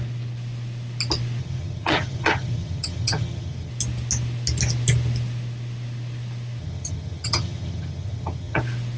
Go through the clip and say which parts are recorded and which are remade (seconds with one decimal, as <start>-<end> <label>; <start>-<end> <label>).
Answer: 0.0-1.4 recorded; 1.4-3.7 remade; 3.7-6.6 recorded; 6.6-8.6 remade; 8.6-9.0 recorded